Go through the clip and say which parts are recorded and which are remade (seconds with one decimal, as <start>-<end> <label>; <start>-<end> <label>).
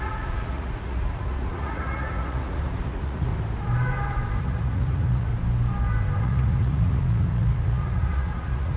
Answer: 0.0-3.3 remade; 3.3-4.4 recorded; 4.4-5.3 remade; 5.3-6.2 recorded; 6.2-8.8 remade